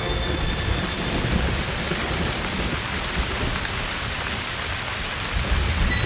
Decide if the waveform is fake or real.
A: real